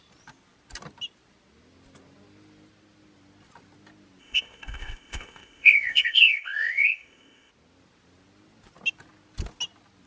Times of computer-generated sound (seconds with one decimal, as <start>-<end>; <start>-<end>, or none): 4.2-7.5